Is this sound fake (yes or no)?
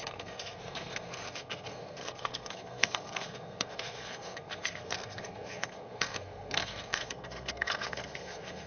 yes